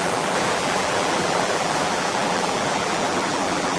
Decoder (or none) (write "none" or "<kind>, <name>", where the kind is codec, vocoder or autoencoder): vocoder, BigVGAN v2